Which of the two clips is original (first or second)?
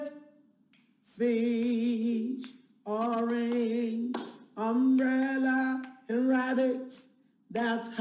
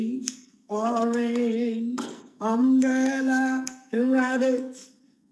first